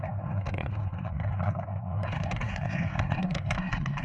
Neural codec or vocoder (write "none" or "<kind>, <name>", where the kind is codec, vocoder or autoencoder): codec, SNAC